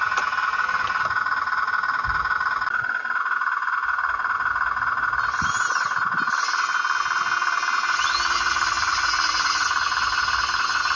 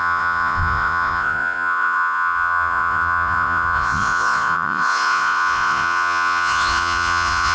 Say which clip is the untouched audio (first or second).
first